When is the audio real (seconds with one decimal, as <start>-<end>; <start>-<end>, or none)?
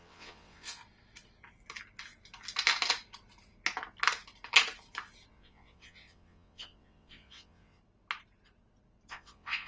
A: 0.8-5.3; 7.8-9.1